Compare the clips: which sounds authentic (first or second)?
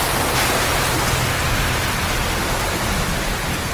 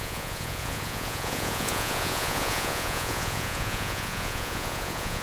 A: first